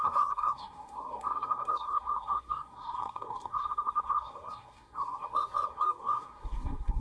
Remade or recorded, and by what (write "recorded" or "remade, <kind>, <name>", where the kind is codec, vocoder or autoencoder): remade, codec, SNAC